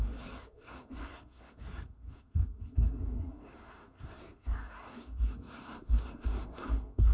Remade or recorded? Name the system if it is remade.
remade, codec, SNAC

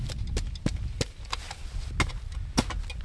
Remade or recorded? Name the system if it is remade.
recorded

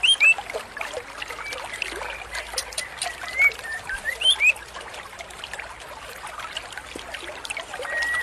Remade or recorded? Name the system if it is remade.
recorded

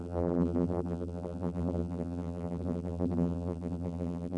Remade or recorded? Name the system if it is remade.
remade, vocoder, BigVGAN v2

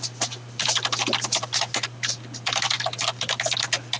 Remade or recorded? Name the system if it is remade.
recorded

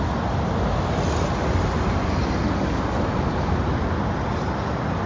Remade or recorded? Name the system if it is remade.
recorded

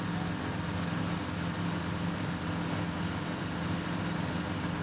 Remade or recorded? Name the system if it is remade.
recorded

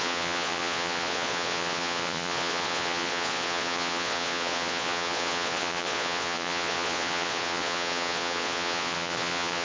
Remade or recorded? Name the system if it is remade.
remade, vocoder, Vocos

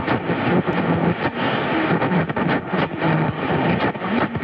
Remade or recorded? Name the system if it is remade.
recorded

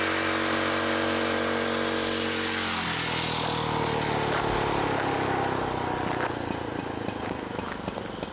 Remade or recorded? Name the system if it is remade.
recorded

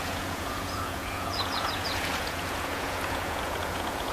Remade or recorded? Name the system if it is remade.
remade, vocoder, Vocos